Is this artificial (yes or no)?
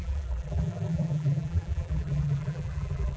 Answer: yes